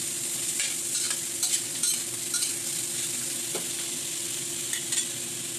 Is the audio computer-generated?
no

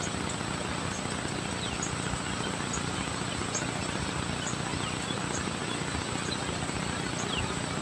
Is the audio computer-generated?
no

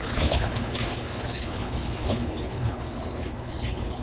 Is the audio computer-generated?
yes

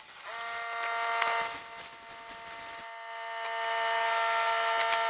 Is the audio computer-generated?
no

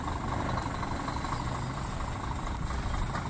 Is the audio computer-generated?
yes